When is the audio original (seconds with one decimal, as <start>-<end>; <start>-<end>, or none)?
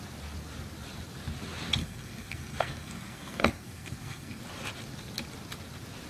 0.0-1.8; 4.4-6.1